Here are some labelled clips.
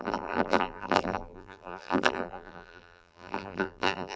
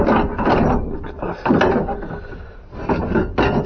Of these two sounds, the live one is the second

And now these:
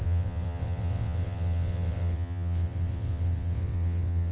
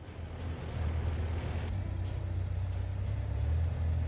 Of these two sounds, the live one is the second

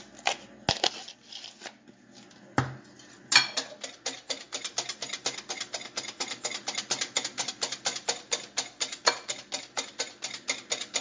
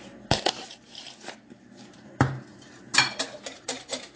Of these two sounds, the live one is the first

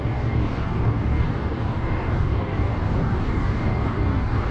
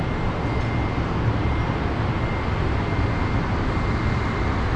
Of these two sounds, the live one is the second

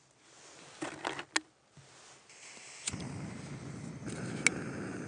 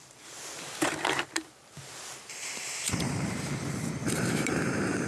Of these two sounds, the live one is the first